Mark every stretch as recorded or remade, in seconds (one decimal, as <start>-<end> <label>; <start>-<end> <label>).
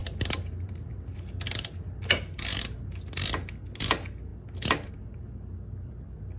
0.0-6.4 recorded